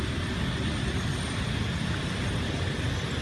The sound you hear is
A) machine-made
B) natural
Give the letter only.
B